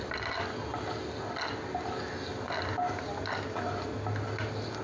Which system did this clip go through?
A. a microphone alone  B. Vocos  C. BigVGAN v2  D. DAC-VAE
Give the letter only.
A